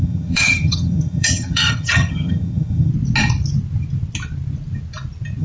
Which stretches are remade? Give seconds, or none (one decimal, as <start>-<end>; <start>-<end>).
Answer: 0.0-2.9